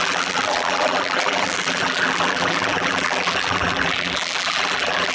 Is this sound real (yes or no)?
no